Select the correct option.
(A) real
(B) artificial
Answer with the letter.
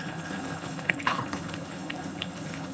B